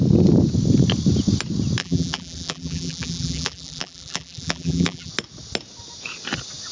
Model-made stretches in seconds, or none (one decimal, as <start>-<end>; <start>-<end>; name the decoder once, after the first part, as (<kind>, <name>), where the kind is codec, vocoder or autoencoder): 1.8-5.1 (vocoder, BigVGAN v2)